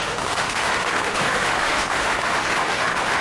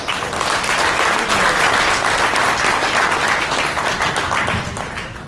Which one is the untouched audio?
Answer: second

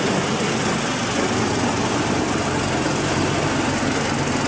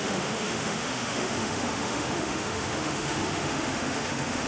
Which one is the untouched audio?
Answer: first